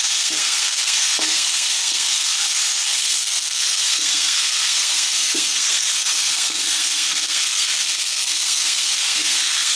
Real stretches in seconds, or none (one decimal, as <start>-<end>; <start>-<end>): none